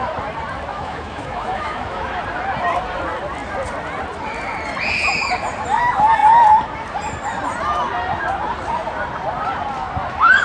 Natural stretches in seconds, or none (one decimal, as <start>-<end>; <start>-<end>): 0.0-0.7; 2.2-10.4